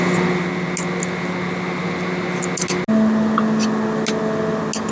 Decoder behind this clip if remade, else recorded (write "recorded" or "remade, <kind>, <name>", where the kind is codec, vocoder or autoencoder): recorded